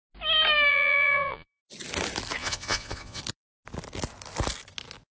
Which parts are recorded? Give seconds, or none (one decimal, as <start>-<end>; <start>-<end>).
0.0-0.7; 1.6-2.4; 3.2-5.2